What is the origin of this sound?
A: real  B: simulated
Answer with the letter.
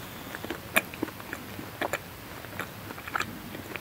A